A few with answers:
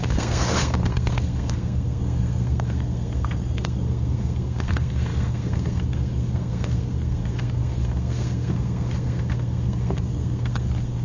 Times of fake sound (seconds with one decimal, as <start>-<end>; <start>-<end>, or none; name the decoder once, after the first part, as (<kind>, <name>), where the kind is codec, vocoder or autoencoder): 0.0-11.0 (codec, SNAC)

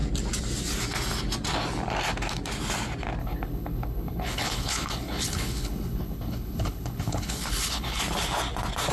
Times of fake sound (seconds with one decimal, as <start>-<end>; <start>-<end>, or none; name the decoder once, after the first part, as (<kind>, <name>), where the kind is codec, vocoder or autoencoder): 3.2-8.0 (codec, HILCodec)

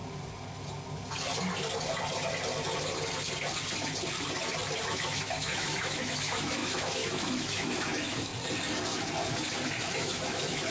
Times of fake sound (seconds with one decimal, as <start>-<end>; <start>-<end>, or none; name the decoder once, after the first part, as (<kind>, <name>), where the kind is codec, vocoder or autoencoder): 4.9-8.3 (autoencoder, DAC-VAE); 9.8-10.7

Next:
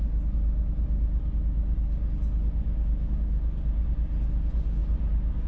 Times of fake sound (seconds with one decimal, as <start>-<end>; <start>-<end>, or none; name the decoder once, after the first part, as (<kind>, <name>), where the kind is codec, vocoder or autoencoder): none

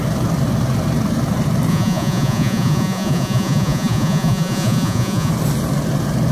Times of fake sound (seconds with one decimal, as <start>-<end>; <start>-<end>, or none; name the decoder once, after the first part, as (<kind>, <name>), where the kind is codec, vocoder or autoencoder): 1.7-5.3 (vocoder, Vocos)

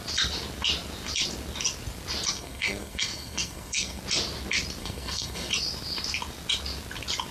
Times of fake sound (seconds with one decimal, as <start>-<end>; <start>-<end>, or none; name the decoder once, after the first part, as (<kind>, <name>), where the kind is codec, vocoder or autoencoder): 2.3-4.0 (codec, SNAC); 4.8-5.5

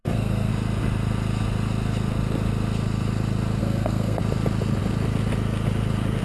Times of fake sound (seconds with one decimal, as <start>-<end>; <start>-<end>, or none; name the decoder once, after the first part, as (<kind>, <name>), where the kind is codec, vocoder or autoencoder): 0.0-0.5 (codec, SNAC); 3.6-4.2

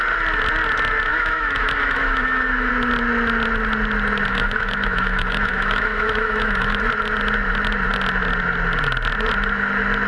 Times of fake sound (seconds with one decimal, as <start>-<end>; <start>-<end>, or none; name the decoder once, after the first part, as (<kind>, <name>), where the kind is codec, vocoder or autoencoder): 1.1-2.7 (autoencoder, DAC-VAE); 4.3-6.8